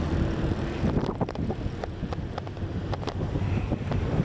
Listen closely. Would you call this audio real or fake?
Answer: fake